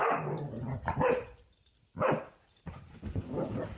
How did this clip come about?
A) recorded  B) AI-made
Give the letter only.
A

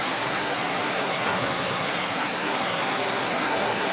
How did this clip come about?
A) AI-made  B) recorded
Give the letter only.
A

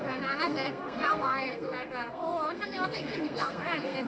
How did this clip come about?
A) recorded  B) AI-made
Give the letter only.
B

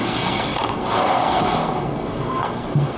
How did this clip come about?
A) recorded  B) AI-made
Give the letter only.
B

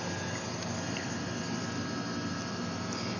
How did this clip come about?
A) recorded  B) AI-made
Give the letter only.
A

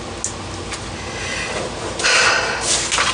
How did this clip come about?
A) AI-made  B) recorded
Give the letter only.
B